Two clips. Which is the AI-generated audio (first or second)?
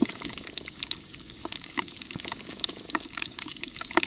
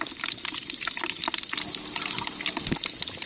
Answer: first